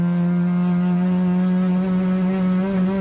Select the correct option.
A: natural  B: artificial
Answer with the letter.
A